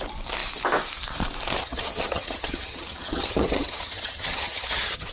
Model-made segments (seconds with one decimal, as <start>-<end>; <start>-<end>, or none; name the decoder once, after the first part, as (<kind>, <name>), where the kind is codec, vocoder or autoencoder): 1.6-5.1 (vocoder, HiFi-GAN)